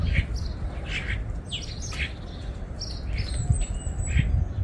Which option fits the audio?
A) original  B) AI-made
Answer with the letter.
A